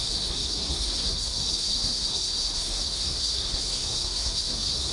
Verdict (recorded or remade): remade